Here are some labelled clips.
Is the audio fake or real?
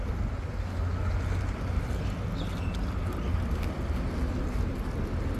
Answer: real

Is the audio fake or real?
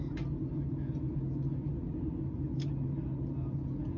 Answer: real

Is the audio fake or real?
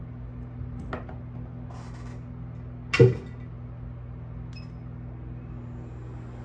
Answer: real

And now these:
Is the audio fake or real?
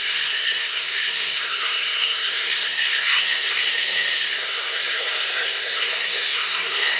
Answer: fake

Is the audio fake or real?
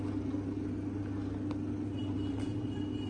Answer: real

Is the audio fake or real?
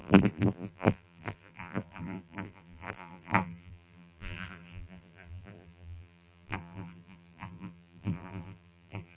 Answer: fake